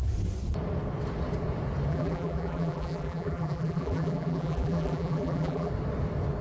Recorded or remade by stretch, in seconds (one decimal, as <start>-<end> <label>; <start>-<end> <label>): 0.0-1.9 recorded; 1.9-5.7 remade; 5.7-6.4 recorded